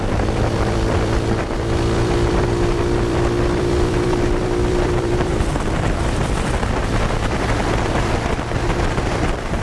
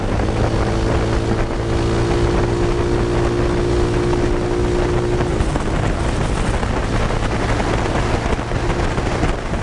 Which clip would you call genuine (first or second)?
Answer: second